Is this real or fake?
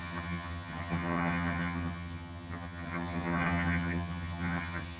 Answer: fake